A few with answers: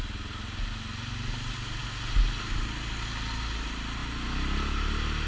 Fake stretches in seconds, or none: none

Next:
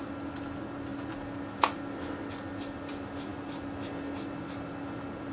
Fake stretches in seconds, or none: none

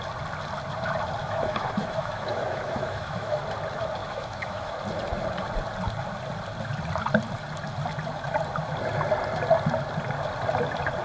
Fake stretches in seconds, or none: 1.2-3.4 (autoencoder, DAC-VAE); 4.0-4.7